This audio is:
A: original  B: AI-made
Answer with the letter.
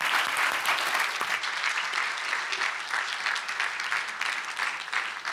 A